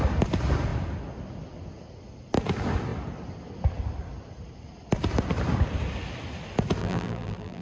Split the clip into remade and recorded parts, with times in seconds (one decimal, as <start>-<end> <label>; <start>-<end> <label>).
0.0-6.8 recorded; 6.8-7.6 remade